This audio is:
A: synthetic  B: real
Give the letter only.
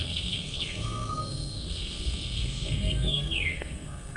A